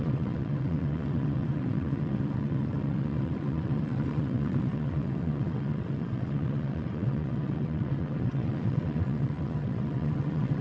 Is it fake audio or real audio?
fake